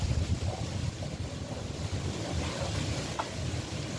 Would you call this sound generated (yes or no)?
no